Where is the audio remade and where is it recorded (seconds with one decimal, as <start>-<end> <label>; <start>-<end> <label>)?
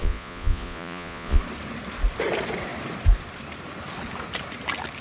0.0-1.4 remade; 1.4-5.0 recorded